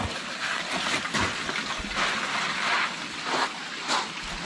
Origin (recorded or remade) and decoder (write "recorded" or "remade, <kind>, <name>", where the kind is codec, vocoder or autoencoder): recorded